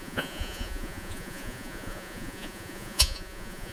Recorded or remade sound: remade